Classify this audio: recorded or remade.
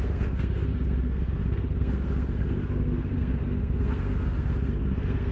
remade